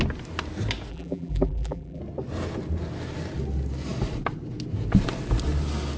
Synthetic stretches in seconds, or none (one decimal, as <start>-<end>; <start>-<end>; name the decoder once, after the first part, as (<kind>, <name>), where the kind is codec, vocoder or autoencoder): 0.9-2.0 (vocoder, BigVGAN v2)